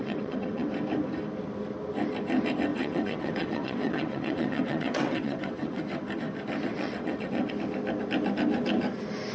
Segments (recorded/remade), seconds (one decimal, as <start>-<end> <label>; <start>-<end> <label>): 0.0-0.7 remade; 0.7-2.7 recorded; 2.7-5.8 remade; 5.8-6.7 recorded; 6.7-7.5 remade; 7.5-9.3 recorded